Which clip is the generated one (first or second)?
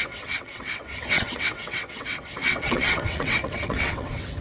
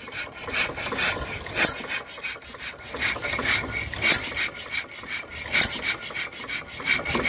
first